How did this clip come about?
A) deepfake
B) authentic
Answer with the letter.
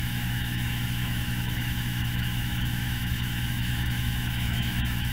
A